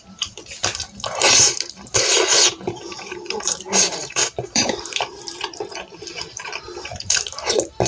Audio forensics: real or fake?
fake